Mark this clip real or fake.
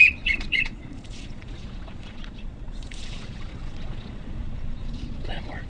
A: fake